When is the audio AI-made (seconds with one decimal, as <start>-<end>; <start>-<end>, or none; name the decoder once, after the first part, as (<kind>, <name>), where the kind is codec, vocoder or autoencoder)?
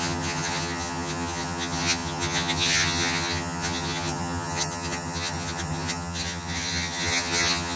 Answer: 0.0-7.8 (vocoder, HiFi-GAN)